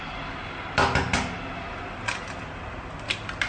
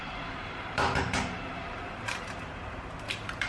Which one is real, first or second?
first